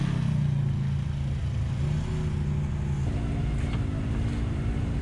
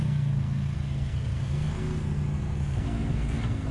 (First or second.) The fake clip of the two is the second